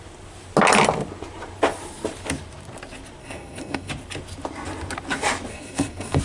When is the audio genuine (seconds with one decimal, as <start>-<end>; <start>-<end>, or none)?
0.0-3.2; 3.9-5.5